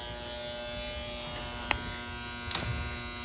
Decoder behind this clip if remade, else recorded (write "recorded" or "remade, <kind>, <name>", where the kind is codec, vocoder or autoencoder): recorded